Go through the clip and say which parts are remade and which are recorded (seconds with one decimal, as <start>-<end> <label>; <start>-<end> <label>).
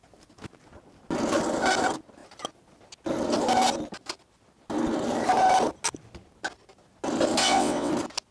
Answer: 0.0-7.4 recorded; 7.4-7.9 remade; 7.9-8.3 recorded